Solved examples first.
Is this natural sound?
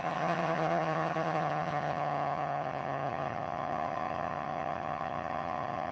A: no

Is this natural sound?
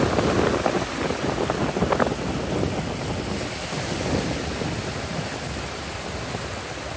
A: yes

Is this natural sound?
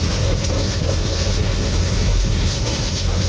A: no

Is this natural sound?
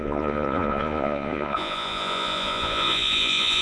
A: no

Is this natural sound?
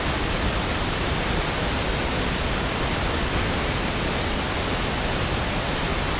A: yes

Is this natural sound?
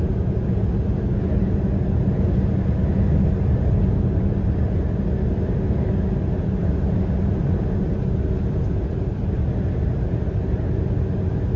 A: yes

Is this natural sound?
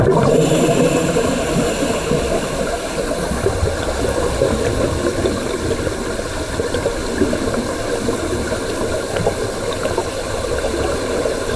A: yes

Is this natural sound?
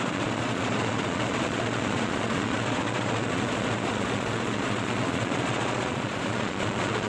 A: no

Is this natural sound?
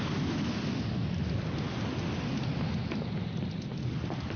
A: yes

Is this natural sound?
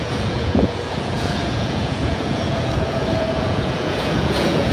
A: no